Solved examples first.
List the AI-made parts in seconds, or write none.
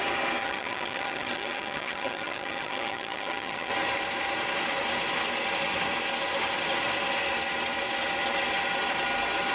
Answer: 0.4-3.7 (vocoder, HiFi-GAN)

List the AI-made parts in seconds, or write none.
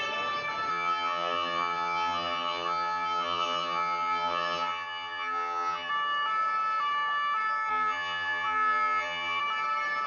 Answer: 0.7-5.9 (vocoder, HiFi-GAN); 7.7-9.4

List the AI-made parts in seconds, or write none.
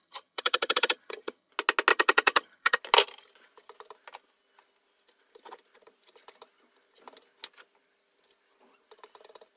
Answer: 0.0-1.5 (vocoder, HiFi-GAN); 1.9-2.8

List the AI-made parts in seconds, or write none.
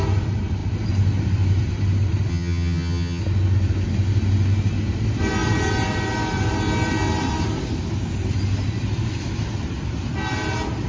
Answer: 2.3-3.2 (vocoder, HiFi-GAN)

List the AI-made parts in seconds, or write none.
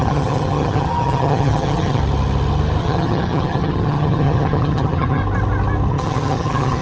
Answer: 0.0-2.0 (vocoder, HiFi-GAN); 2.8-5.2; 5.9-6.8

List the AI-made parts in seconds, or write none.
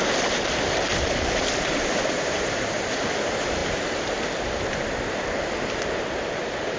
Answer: none